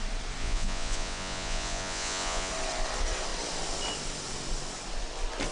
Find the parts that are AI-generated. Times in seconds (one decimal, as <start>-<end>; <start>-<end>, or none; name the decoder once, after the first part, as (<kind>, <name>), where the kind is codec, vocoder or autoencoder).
0.4-2.5 (vocoder, Vocos)